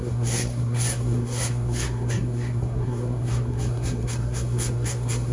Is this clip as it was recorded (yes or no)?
no